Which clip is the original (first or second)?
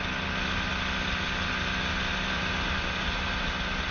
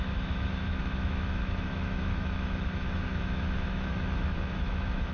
first